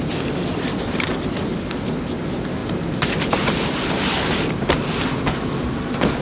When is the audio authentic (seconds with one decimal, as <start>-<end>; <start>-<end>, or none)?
0.0-6.2